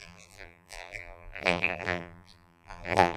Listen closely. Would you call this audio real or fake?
fake